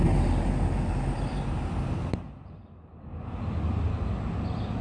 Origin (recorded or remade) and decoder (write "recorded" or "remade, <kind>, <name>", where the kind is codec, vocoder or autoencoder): recorded